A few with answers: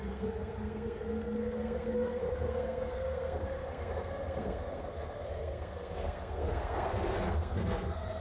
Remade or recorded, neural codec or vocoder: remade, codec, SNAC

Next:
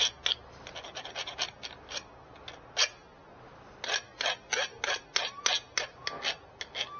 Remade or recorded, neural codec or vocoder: recorded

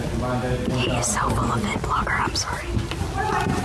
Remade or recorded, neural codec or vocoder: recorded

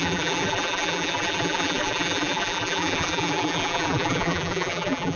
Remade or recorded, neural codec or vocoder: remade, vocoder, BigVGAN v2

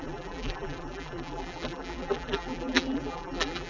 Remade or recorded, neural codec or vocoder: remade, vocoder, BigVGAN v2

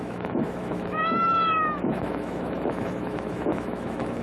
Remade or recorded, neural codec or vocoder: remade, autoencoder, DAC-VAE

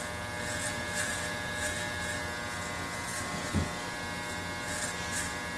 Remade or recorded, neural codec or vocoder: recorded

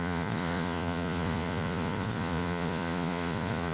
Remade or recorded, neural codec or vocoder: remade, vocoder, Vocos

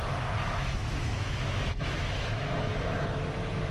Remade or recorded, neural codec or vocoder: remade, autoencoder, DAC-VAE